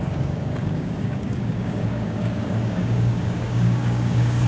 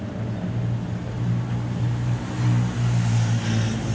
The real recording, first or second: second